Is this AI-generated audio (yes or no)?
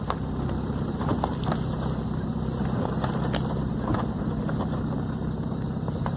no